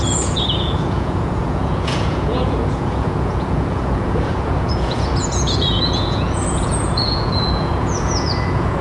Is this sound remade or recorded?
remade